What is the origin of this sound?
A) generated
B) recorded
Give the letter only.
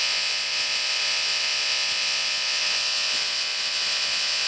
A